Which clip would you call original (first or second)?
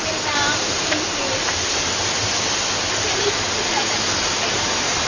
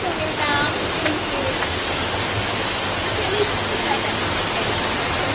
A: second